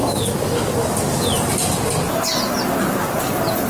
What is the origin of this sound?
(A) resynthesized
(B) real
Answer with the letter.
B